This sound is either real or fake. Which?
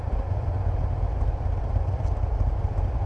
real